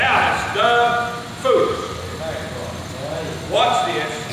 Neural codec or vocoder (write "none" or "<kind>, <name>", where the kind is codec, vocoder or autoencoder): none